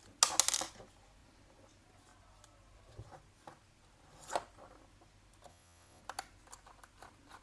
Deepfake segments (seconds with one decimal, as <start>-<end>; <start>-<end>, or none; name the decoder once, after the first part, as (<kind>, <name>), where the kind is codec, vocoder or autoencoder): 5.5-6.0 (vocoder, Vocos)

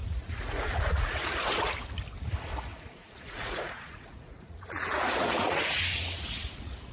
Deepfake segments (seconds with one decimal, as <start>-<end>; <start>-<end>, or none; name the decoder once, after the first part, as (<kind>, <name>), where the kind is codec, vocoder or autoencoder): 0.0-1.7 (vocoder, Vocos); 2.7-6.9